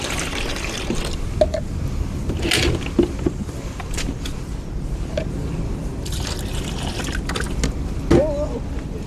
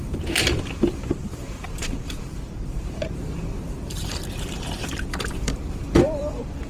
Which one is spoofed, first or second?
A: second